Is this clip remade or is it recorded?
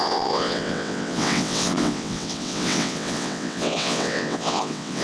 remade